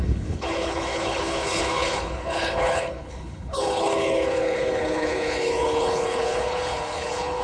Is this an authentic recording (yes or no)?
no